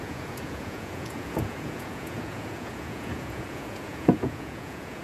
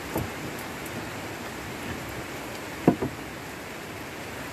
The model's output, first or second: first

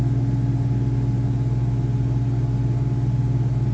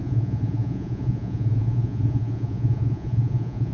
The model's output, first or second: second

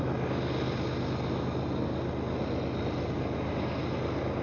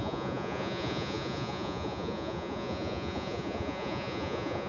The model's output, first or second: second